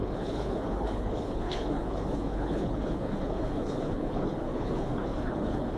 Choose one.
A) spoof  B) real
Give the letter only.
A